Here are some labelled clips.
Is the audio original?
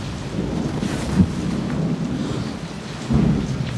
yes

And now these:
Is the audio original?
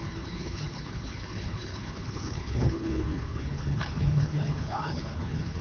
no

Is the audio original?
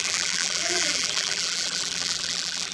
no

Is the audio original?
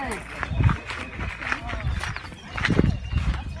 yes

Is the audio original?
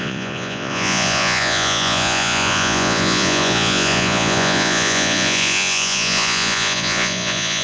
no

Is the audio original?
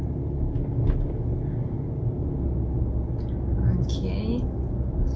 yes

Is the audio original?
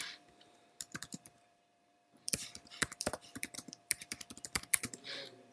no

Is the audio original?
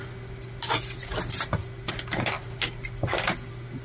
yes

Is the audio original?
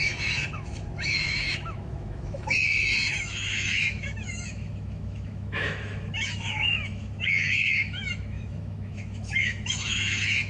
no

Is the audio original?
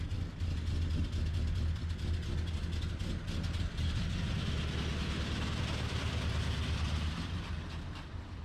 yes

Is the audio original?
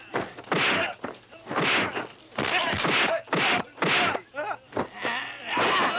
yes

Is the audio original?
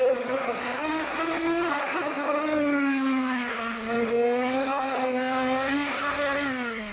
no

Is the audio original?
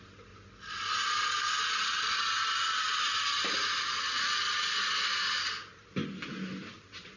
yes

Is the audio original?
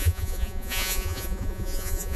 no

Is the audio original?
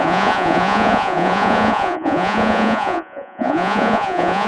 no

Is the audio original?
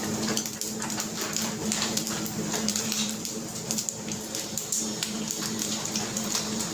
no